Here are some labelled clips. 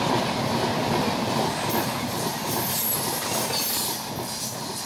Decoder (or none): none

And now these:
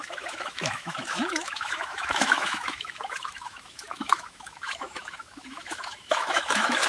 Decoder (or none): autoencoder, DAC-VAE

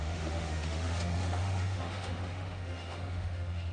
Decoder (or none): autoencoder, DAC-VAE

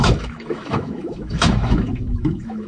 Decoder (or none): autoencoder, DAC-VAE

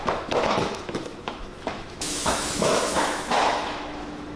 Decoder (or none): autoencoder, DAC-VAE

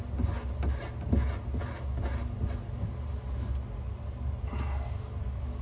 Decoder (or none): none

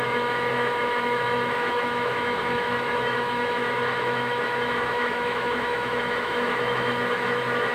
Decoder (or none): autoencoder, DAC-VAE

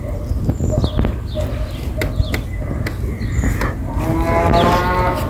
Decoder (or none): none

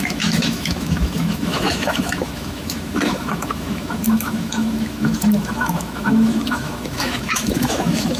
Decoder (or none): autoencoder, DAC-VAE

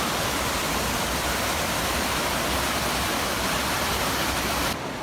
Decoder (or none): none